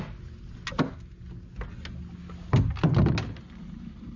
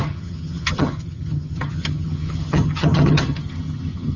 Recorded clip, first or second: first